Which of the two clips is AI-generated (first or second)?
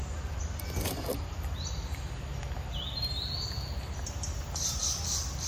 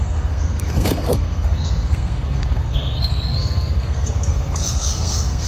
second